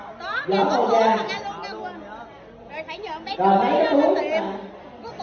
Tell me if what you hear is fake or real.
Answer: real